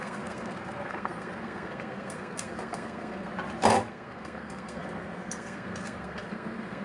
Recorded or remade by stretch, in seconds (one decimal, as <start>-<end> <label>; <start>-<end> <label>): 0.0-3.3 remade; 3.3-3.9 recorded; 3.9-6.8 remade